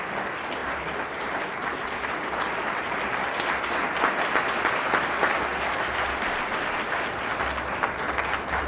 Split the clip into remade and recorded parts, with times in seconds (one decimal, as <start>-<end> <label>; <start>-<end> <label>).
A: 0.0-0.6 recorded; 0.6-1.4 remade; 1.4-8.7 recorded